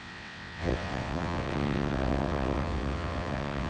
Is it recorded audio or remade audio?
remade